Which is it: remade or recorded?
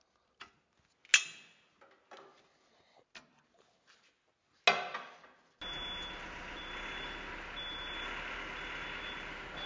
recorded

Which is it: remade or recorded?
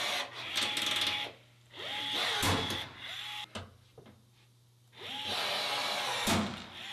recorded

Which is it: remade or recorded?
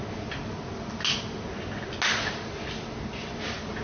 recorded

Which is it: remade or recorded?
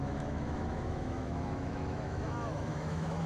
remade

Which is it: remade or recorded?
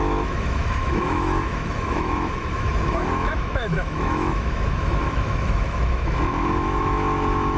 remade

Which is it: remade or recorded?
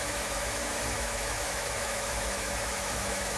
remade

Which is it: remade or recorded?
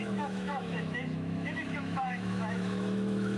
remade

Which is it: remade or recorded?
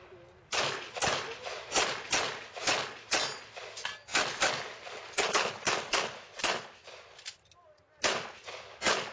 recorded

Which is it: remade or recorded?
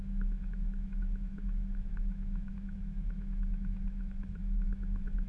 remade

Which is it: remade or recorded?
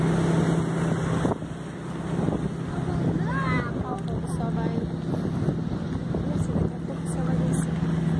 recorded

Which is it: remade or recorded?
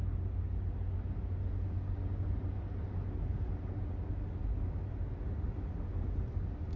recorded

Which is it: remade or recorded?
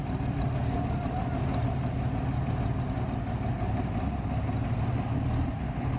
recorded